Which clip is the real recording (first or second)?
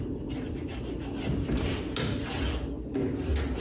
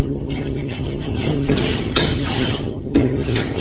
first